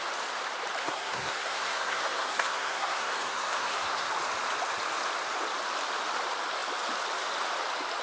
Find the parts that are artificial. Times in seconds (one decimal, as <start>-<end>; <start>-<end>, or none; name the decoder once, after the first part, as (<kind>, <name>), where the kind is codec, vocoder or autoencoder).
0.8-4.1 (codec, SNAC)